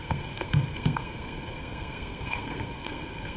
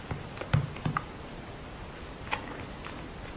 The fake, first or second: first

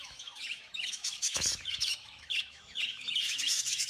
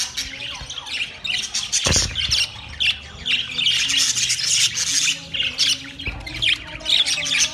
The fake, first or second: first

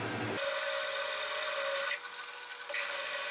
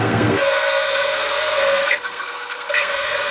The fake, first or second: second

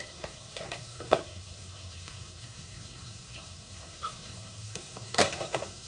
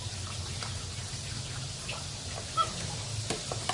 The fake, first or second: first